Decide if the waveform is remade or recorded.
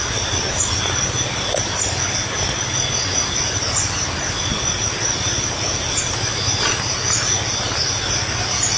recorded